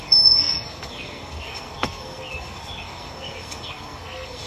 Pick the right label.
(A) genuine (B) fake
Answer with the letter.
B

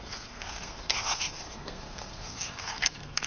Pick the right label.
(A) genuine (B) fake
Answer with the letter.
B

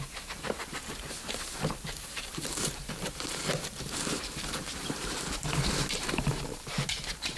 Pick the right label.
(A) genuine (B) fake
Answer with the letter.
B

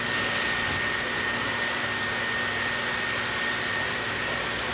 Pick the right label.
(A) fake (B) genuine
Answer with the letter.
B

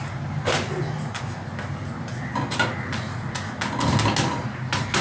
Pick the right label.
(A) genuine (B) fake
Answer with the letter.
A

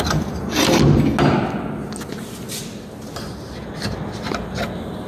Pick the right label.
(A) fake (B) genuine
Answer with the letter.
B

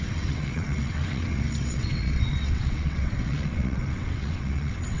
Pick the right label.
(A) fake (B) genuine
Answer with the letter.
A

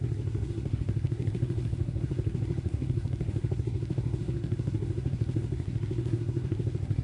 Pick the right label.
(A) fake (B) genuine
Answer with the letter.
A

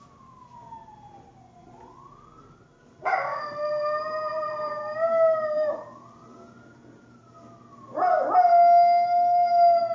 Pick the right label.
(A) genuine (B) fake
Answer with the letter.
A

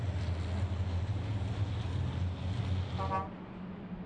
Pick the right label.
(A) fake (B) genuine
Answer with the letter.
B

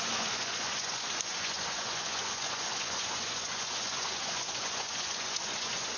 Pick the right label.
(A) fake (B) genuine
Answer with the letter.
A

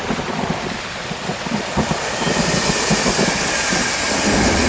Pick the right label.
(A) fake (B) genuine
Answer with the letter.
A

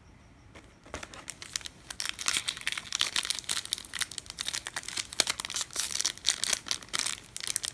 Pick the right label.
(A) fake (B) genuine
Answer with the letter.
B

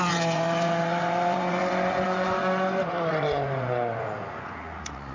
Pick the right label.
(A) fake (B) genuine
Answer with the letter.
A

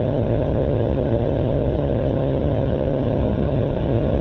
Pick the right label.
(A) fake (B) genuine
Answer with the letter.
A